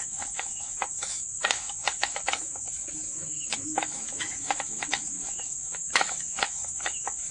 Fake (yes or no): yes